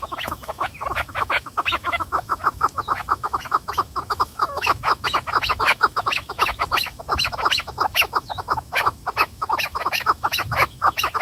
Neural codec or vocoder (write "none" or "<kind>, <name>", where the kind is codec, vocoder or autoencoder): autoencoder, DAC-VAE